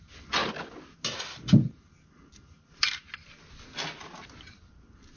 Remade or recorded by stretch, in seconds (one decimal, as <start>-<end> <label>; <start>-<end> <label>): 0.0-5.2 recorded